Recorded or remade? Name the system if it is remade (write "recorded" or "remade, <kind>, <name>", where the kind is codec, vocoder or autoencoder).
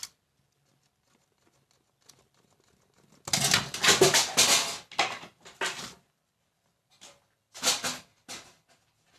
recorded